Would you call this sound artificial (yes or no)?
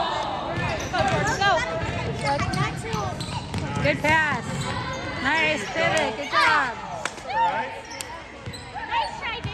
no